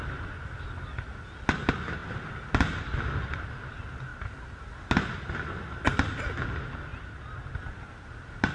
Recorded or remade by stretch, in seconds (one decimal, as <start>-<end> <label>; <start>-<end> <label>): 0.0-8.5 recorded